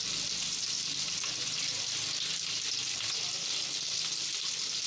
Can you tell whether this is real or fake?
real